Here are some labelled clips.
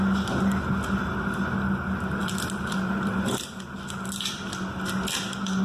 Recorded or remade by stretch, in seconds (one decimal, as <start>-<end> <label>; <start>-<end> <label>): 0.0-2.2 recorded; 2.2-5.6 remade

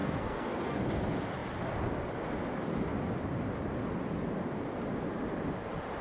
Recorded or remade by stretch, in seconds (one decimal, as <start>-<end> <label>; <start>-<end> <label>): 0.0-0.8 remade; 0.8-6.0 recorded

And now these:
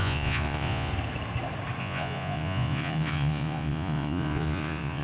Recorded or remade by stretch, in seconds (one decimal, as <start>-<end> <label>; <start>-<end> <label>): 0.0-0.9 remade; 0.9-1.8 recorded; 1.8-5.0 remade